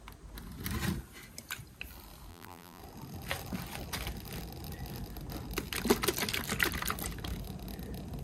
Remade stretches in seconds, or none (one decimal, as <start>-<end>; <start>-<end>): 2.3-2.8